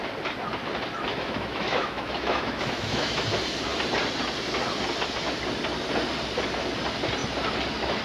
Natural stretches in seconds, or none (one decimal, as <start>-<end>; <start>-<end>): 0.0-1.1; 3.2-8.0